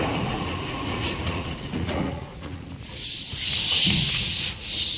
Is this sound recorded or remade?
remade